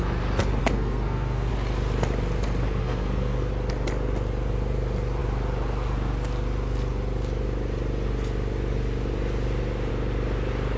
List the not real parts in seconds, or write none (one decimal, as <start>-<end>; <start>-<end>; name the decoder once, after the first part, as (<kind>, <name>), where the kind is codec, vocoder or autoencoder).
0.6-1.5 (codec, SNAC); 2.8-3.5